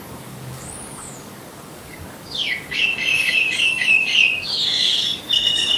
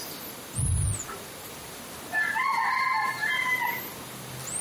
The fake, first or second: first